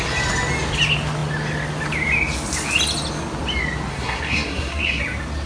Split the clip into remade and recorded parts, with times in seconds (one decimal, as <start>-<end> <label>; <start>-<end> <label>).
0.0-3.9 recorded; 3.9-5.0 remade; 5.0-5.5 recorded